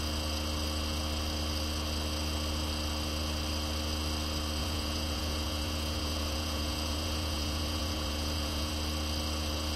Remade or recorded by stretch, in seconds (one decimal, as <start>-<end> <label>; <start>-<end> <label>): 0.0-4.6 recorded; 4.6-8.7 remade; 8.7-9.8 recorded